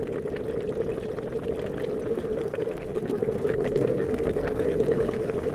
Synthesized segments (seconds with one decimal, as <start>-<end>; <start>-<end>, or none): 2.1-5.5

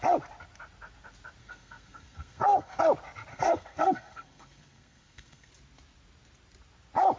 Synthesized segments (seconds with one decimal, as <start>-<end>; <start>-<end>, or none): 1.4-2.8; 3.3-5.5

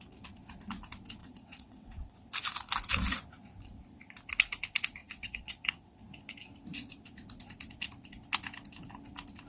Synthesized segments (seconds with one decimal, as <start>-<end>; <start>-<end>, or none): 1.2-2.1; 5.0-6.0

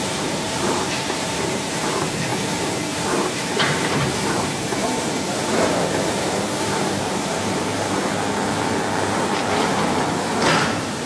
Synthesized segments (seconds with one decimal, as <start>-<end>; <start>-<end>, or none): 0.0-2.3; 3.3-4.8; 6.6-7.7; 9.7-11.1

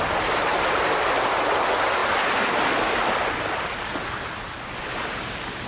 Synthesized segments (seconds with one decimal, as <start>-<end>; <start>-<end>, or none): none